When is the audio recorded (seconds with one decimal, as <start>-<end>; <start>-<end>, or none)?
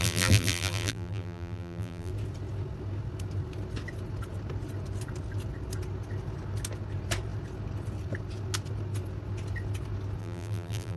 2.1-10.2